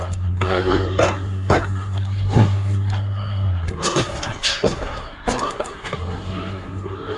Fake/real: fake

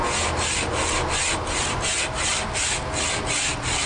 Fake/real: real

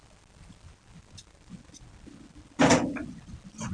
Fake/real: real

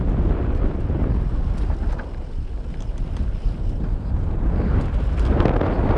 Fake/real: real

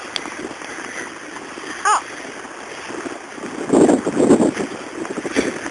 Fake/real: real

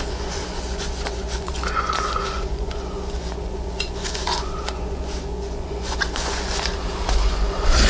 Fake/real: fake